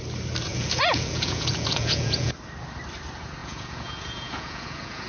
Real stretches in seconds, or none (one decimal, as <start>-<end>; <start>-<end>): 0.0-0.5; 2.3-3.4